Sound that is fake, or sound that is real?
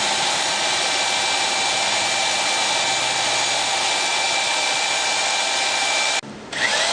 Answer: real